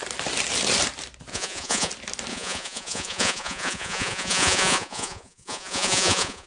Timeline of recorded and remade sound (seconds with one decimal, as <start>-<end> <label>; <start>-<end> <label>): 0.0-1.3 recorded; 1.3-1.9 remade; 1.9-2.3 recorded; 2.3-6.5 remade